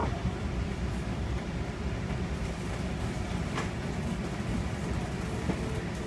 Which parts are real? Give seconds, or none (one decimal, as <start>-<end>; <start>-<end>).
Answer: 2.0-6.1